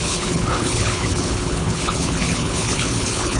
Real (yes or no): no